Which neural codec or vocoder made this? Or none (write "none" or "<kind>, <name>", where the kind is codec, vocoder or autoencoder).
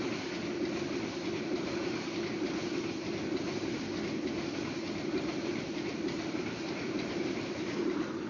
none